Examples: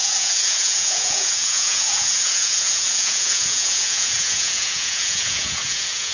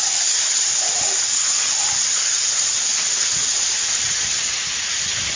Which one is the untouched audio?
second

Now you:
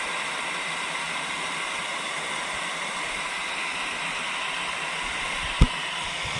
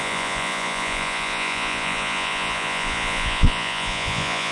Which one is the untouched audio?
first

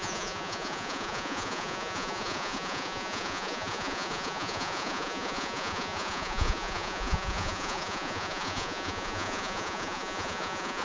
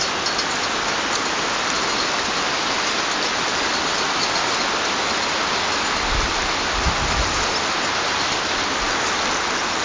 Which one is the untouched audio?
second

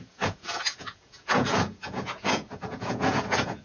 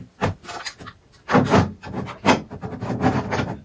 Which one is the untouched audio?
second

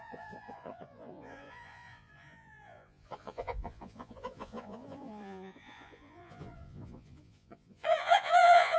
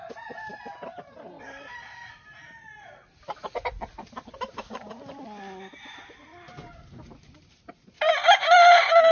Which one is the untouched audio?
second